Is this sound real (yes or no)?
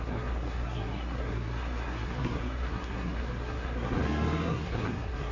no